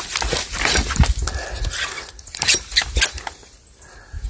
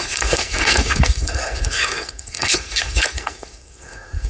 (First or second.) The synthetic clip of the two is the second